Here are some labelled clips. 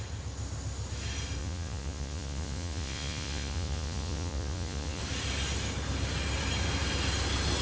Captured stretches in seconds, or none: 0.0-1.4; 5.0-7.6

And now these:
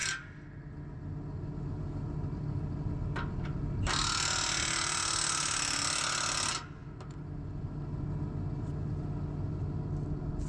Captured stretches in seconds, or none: 0.0-10.5

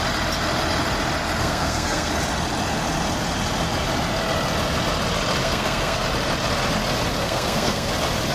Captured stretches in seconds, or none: 0.0-1.4; 2.1-5.4; 6.0-7.2; 7.9-8.3

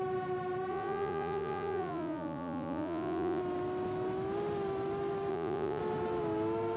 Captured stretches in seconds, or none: 0.0-0.7; 3.4-5.3; 5.8-6.8

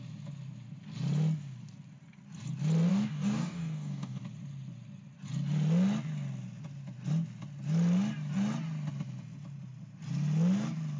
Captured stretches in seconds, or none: 0.0-2.9; 4.2-11.0

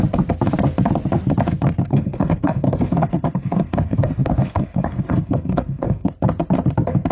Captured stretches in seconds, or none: 0.0-1.9; 6.1-7.1

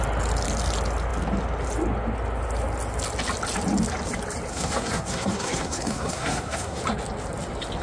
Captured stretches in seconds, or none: 0.0-4.5; 6.8-7.8